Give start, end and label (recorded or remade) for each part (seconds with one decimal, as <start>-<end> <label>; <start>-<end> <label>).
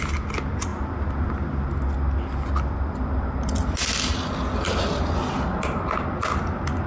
0.0-6.9 recorded